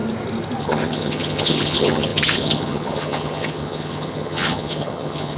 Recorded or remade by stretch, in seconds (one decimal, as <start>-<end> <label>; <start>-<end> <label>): 0.0-0.6 recorded; 0.6-5.4 remade